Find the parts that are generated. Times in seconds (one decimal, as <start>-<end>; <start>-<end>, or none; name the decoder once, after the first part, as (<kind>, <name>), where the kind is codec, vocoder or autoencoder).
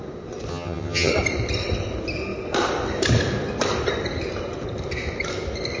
0.5-1.1 (vocoder, HiFi-GAN)